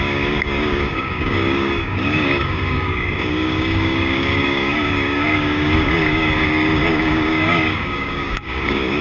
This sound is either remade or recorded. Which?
remade